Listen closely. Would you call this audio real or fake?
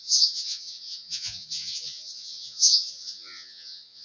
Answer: fake